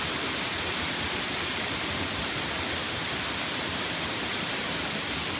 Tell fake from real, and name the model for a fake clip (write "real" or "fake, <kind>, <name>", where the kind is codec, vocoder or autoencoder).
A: fake, vocoder, BigVGAN v2